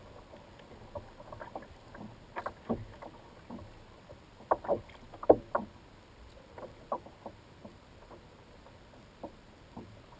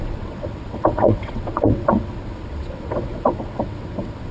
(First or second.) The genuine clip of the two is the first